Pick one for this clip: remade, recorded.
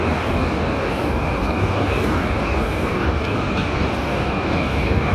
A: remade